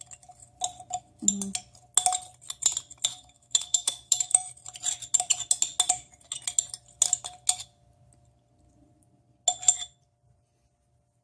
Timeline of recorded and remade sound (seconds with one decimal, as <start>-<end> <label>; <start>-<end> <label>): 0.0-3.1 recorded; 3.1-4.5 remade; 4.5-11.2 recorded